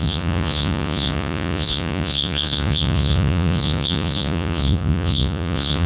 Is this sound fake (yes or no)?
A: yes